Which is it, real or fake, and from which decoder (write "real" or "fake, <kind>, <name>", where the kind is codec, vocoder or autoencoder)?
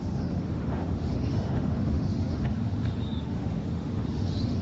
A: fake, autoencoder, DAC-VAE